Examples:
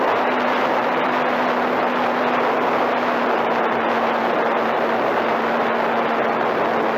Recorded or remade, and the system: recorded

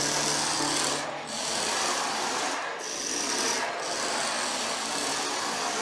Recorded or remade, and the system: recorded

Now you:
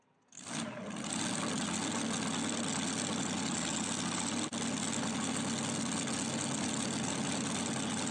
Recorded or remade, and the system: recorded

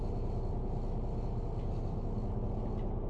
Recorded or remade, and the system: recorded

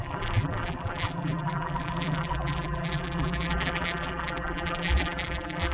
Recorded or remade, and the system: remade, vocoder, BigVGAN v2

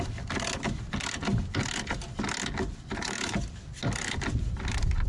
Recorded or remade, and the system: recorded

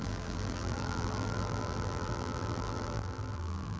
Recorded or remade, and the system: remade, vocoder, BigVGAN v2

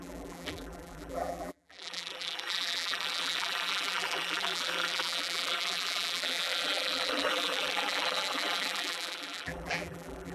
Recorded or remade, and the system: remade, vocoder, BigVGAN v2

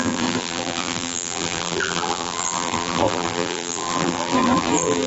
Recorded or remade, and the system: remade, vocoder, BigVGAN v2